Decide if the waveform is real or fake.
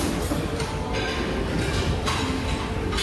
real